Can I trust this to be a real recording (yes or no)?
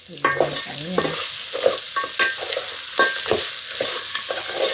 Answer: yes